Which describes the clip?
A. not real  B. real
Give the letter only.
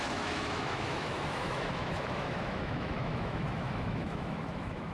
A